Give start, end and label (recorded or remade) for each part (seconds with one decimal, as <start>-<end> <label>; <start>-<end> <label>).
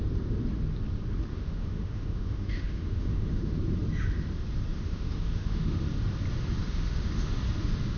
0.0-1.3 recorded; 1.3-3.6 remade; 3.6-4.7 recorded; 4.7-5.8 remade; 5.8-6.6 recorded; 6.6-7.4 remade; 7.4-8.0 recorded